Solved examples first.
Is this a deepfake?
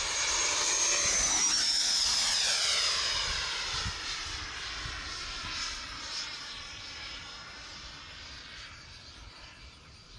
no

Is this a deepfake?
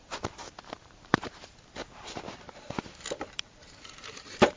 yes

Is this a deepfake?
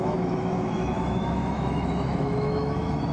yes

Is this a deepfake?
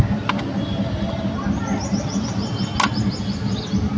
no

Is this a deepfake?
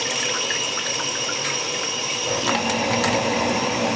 no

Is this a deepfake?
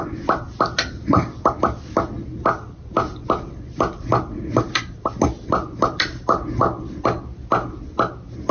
no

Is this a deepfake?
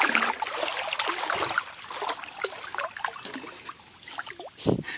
no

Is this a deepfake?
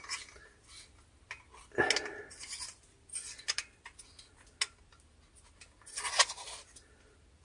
no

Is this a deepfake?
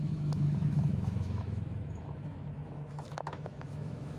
yes